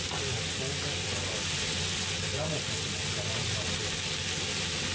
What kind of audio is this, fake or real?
real